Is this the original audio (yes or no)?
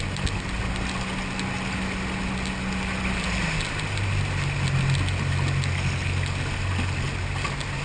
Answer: yes